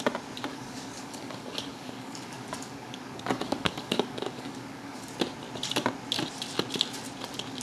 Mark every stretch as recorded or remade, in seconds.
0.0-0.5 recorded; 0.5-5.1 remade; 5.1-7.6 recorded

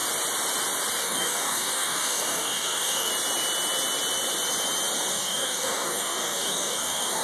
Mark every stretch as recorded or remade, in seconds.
0.0-1.0 recorded; 1.0-3.1 remade; 3.1-5.1 recorded; 5.1-7.2 remade

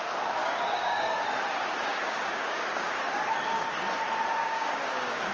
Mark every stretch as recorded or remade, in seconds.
0.0-0.4 recorded; 0.4-1.2 remade; 1.2-1.9 recorded; 1.9-2.9 remade; 2.9-4.4 recorded; 4.4-5.3 remade

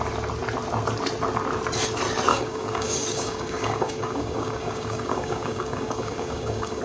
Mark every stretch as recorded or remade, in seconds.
0.0-2.3 recorded; 2.3-6.8 remade

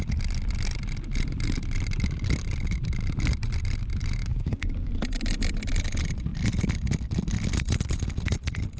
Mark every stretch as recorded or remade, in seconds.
0.0-4.2 recorded; 4.2-4.9 remade; 4.9-8.8 recorded